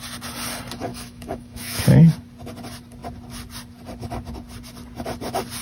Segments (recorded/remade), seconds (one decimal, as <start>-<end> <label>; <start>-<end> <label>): 0.0-0.9 recorded; 0.9-1.8 remade; 1.8-5.6 recorded